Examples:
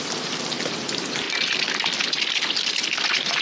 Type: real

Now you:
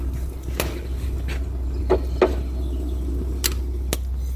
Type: real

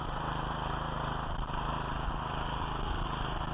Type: real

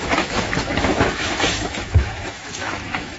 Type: fake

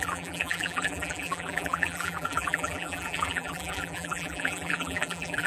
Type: fake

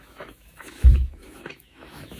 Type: fake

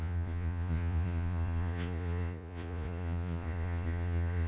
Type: fake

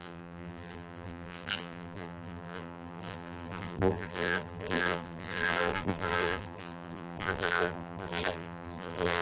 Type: fake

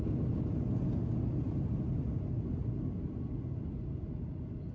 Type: real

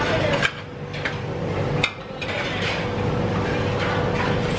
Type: real